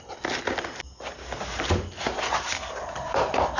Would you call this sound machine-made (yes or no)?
no